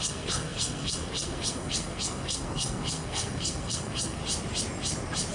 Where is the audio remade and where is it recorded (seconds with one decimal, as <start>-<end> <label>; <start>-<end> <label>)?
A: 0.0-4.2 remade; 4.2-5.3 recorded